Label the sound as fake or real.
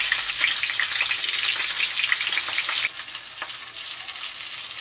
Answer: real